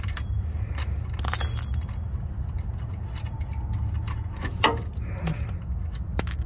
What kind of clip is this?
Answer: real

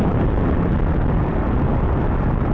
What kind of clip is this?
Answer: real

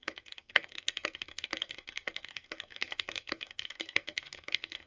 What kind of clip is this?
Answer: fake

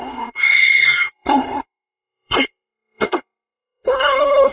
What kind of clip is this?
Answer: fake